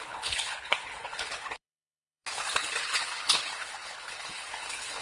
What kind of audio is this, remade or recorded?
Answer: remade